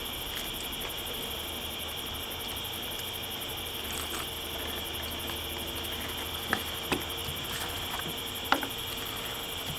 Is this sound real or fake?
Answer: real